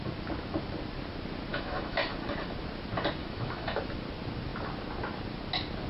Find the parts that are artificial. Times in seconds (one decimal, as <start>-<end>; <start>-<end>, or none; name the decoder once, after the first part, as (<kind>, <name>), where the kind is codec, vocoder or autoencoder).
1.5-2.1 (autoencoder, DAC-VAE); 3.2-3.8